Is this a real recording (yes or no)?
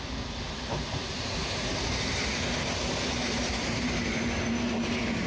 yes